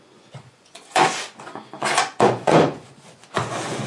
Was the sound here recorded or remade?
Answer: remade